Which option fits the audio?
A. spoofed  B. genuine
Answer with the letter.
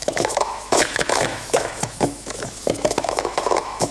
A